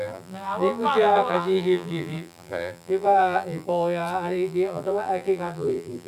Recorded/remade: remade